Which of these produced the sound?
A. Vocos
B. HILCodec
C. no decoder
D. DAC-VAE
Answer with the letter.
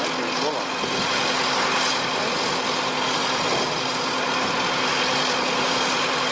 C